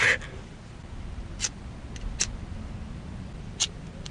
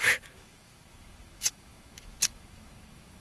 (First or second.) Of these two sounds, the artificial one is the second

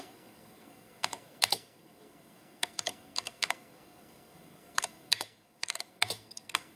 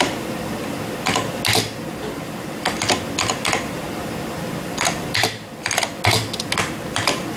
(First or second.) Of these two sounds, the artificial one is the first